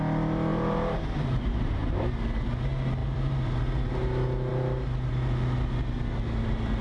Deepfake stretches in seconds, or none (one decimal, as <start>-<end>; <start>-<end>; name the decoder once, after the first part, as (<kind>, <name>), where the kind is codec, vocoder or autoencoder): 0.5-2.0 (vocoder, BigVGAN v2); 3.0-3.6

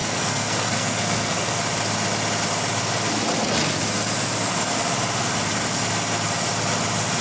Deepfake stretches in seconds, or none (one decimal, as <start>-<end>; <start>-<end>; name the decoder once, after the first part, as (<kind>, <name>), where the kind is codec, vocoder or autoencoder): 0.0-1.6 (codec, SNAC)

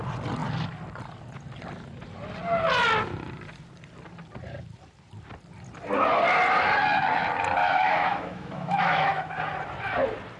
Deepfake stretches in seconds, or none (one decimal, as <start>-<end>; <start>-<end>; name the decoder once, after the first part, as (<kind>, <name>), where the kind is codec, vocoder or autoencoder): 7.6-9.3 (autoencoder, DAC-VAE)